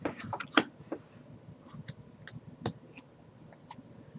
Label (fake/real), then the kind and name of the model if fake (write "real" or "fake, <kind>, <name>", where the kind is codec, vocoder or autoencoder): real